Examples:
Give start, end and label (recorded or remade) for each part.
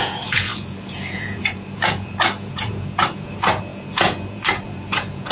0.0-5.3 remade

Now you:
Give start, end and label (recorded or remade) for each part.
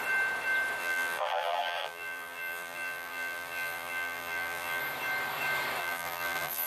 0.0-0.8 recorded; 0.8-4.8 remade; 4.8-5.8 recorded; 5.8-6.7 remade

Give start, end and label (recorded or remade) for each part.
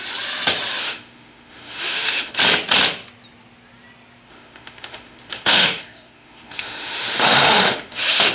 0.0-0.8 recorded; 0.8-2.3 remade; 2.3-4.3 recorded; 4.3-8.3 remade